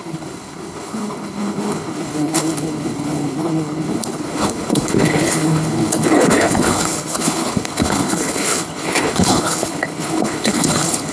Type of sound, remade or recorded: remade